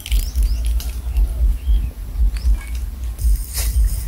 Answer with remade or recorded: recorded